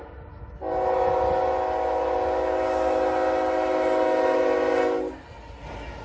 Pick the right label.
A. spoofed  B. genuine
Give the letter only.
B